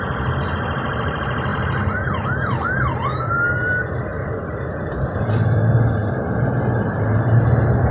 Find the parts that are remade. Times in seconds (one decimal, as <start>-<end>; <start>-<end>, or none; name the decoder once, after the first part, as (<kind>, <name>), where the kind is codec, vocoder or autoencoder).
0.0-4.1 (vocoder, BigVGAN v2); 5.0-6.0; 6.9-7.9